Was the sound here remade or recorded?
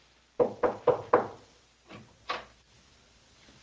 recorded